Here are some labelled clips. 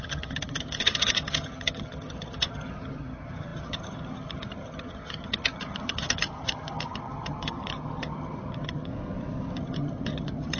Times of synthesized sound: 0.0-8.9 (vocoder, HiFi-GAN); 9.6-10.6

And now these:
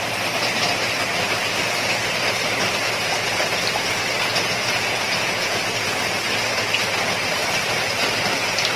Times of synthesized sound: 4.3-6.0 (vocoder, Vocos)

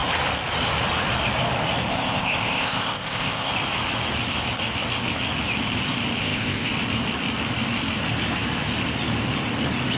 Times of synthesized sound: 1.9-3.5 (codec, ZipCodec); 6.2-6.7

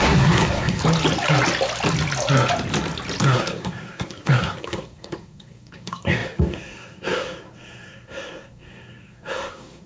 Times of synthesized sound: 0.0-0.8 (codec, SNAC); 3.2-9.9

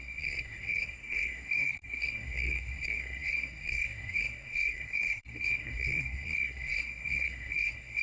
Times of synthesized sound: 0.0-8.0 (codec, SNAC)